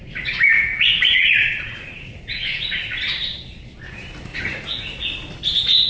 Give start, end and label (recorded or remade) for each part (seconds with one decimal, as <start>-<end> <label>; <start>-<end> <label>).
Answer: 0.0-0.7 recorded; 0.7-3.1 remade; 3.1-4.3 recorded; 4.3-5.0 remade; 5.0-5.9 recorded